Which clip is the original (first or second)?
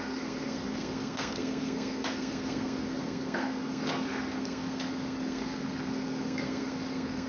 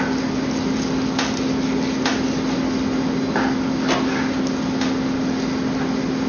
second